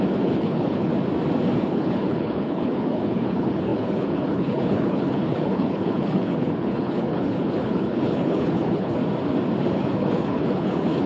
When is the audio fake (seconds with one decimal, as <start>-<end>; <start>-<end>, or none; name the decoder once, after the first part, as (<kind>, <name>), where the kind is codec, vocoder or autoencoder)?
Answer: 0.0-0.9 (codec, HILCodec); 1.6-9.0; 9.7-11.1